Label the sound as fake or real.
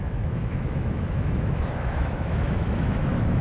fake